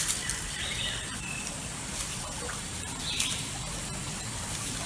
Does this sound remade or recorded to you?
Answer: recorded